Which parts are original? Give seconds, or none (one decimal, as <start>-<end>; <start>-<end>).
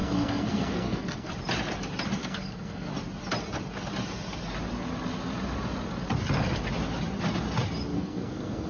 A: 1.3-2.2; 2.9-7.9